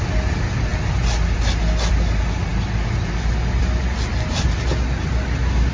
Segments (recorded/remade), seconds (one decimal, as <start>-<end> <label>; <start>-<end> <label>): 0.0-5.7 recorded